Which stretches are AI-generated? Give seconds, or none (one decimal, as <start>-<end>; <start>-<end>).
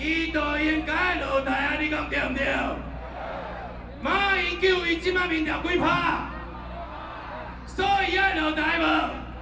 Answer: none